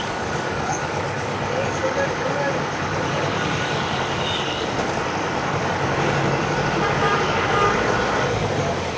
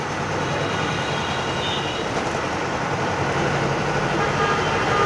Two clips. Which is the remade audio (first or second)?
first